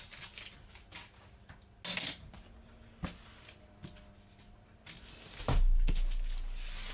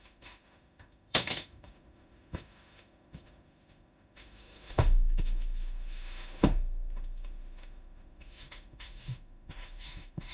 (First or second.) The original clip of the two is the first